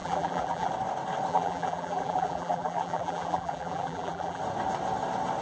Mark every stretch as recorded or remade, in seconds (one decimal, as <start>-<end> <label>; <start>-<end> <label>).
0.0-0.7 remade; 0.7-1.3 recorded; 1.3-4.4 remade; 4.4-5.4 recorded